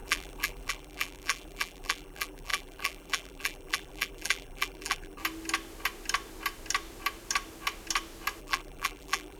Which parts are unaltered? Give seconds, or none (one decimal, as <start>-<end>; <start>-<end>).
5.2-8.4